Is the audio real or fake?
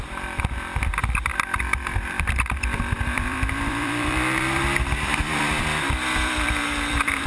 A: fake